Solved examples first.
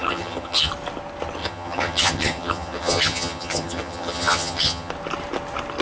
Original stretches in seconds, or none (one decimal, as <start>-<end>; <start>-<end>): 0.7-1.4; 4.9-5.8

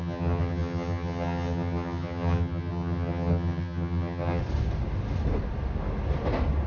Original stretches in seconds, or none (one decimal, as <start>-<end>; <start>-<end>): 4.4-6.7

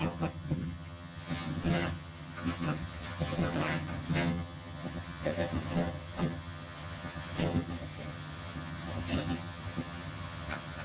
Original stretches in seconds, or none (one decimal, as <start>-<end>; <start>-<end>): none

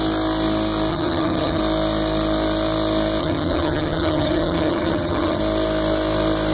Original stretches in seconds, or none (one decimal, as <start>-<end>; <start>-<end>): 0.0-0.9; 1.6-3.2; 5.4-6.5

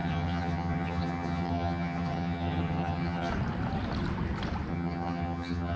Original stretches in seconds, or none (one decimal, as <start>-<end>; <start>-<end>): 3.3-4.7

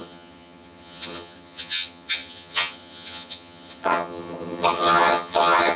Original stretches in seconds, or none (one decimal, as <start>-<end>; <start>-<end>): none

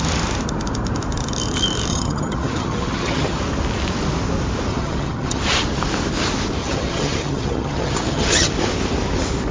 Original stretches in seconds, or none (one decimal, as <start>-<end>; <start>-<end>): 0.0-1.9; 3.4-4.7; 5.4-6.6; 8.5-9.5

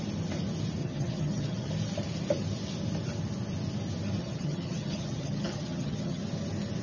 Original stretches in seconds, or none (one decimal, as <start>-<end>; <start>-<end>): 0.0-0.8; 1.7-4.2; 6.2-6.8